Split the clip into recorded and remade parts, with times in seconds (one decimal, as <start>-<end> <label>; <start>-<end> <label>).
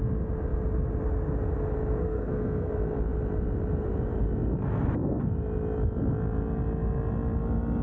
0.0-2.0 recorded; 2.0-2.7 remade; 2.7-7.8 recorded